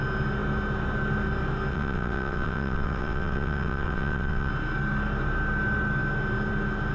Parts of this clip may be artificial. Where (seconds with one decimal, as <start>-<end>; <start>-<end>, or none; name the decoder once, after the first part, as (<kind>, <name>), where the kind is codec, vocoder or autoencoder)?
1.7-4.5 (vocoder, WaveNeXt)